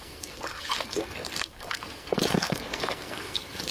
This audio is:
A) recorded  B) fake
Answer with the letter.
B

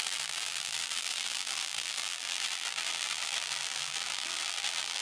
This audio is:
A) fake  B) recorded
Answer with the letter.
A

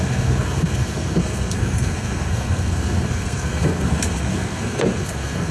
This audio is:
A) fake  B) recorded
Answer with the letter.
A